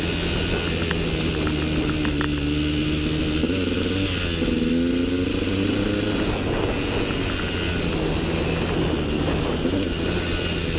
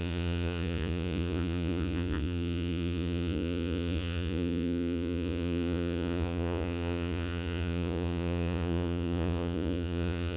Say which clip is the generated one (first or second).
second